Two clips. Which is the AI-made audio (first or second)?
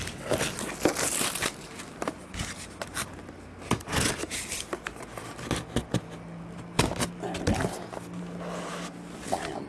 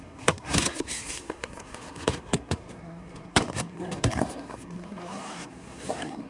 second